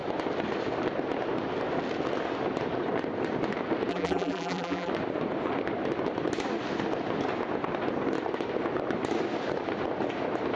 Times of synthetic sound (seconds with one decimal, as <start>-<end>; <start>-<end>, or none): 3.9-4.9

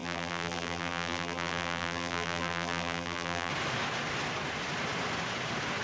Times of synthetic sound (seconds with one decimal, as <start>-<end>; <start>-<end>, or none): 0.0-3.5

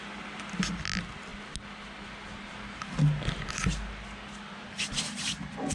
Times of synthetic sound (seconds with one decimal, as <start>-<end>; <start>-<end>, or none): none

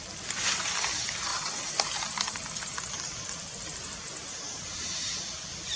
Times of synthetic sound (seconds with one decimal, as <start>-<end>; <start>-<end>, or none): 1.3-2.3

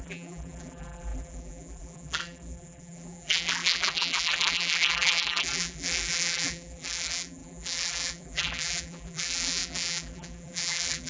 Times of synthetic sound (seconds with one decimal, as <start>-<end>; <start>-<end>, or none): 0.0-11.1